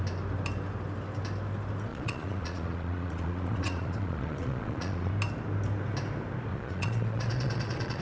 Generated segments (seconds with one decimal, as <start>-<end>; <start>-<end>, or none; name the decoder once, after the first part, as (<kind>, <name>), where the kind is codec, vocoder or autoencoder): 1.9-5.1 (vocoder, Vocos); 6.5-8.0